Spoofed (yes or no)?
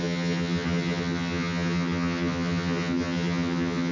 yes